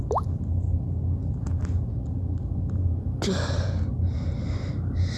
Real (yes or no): yes